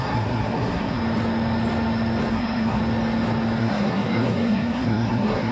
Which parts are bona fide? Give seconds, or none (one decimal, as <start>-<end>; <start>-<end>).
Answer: 1.0-2.3; 2.8-3.6